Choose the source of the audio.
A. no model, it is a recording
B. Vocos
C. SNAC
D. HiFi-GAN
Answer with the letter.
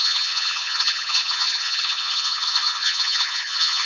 D